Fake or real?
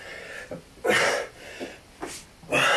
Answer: real